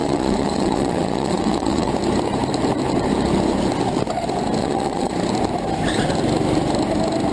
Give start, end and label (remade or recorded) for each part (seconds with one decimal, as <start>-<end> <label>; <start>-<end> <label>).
0.0-1.9 remade; 1.9-4.6 recorded; 4.6-5.1 remade; 5.1-7.3 recorded